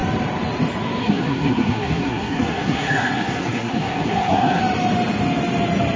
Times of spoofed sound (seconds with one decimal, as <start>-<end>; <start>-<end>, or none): 1.0-4.6